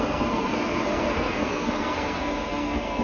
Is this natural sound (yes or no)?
no